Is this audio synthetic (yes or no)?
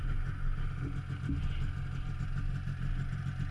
no